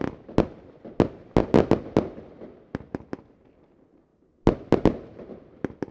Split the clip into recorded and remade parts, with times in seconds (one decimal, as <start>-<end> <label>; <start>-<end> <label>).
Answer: 0.0-5.9 recorded